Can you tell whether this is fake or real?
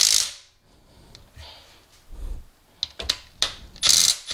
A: real